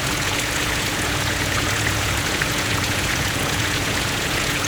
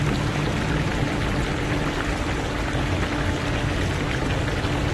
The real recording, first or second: second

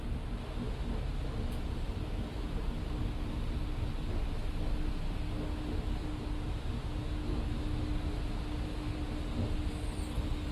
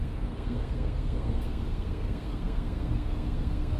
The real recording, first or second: first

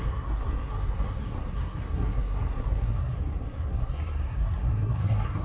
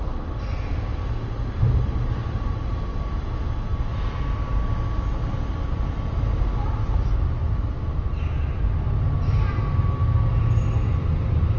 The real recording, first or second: second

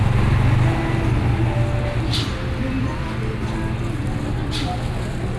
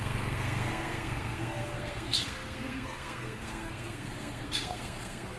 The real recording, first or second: first